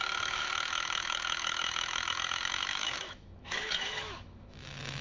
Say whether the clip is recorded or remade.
remade